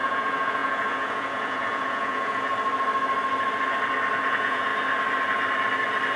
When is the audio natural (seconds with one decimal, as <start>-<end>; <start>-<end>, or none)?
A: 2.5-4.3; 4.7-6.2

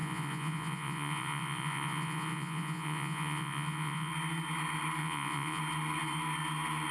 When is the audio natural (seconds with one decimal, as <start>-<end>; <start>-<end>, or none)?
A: 4.1-5.0; 5.6-6.9

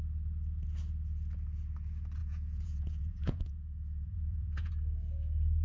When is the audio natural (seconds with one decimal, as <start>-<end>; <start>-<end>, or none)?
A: 0.0-2.2; 4.7-5.6

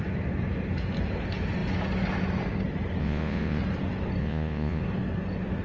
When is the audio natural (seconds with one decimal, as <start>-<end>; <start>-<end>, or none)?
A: 0.0-3.0; 3.6-4.2; 4.8-5.6

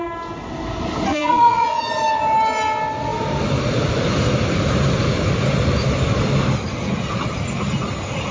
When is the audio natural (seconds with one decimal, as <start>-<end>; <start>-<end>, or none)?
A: 0.0-1.1; 1.8-8.3